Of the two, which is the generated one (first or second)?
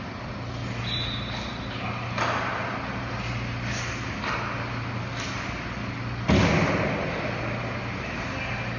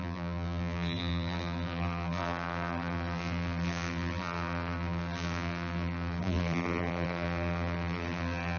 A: second